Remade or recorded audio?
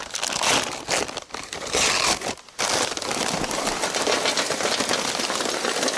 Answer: recorded